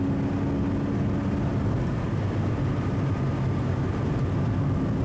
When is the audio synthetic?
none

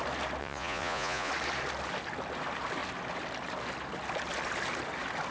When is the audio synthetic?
0.4-1.3 (vocoder, Vocos)

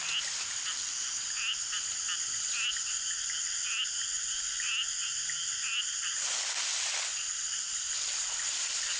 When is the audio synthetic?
none

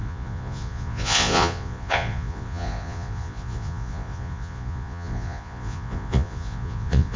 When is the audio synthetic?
0.0-7.2 (vocoder, Vocos)

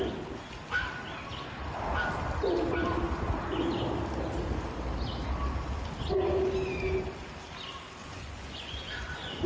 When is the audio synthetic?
8.0-9.5 (vocoder, Vocos)

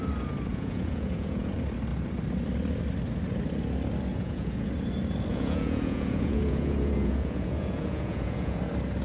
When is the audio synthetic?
0.5-1.5 (vocoder, Vocos); 4.1-4.7; 5.3-8.6

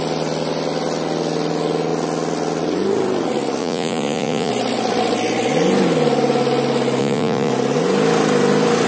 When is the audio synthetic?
3.6-4.5 (vocoder, Vocos); 7.0-7.5